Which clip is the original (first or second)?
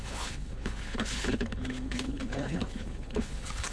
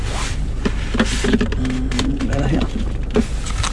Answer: second